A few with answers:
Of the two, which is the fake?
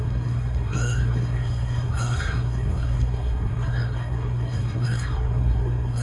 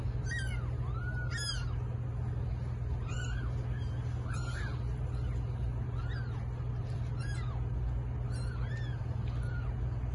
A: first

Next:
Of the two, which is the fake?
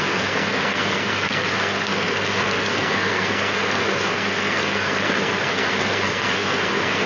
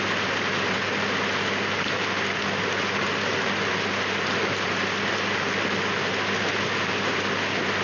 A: first